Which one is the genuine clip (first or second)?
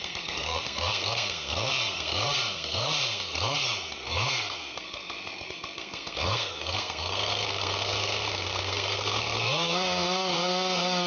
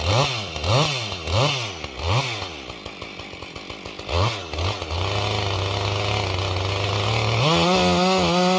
second